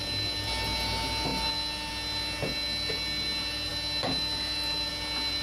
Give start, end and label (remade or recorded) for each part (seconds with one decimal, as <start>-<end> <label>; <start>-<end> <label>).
0.0-5.4 recorded